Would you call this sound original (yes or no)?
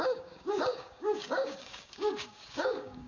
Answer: no